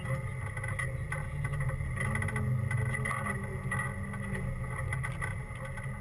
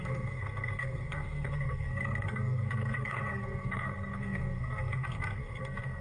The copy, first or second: second